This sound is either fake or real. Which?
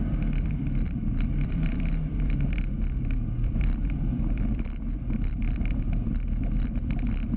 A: fake